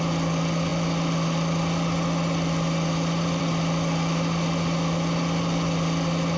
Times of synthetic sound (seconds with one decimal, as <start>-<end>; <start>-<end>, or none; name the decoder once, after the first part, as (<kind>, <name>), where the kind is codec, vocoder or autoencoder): none